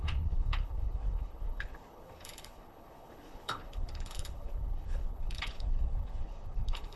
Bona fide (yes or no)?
no